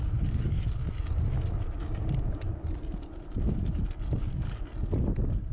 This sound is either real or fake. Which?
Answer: real